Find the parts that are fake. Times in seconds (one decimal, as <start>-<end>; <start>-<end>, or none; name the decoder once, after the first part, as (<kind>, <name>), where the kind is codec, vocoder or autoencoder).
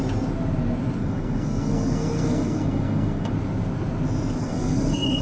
1.0-3.3 (codec, SNAC); 4.4-5.2